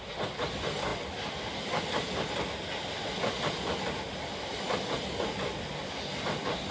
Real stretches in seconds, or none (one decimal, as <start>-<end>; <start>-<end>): 0.0-6.7